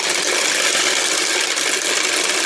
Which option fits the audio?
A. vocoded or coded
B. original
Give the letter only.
B